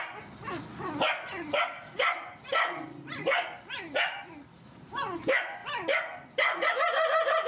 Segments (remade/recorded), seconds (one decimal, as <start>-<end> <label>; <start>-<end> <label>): 0.0-0.4 recorded; 0.4-4.9 remade; 4.9-5.6 recorded; 5.6-6.7 remade; 6.7-7.5 recorded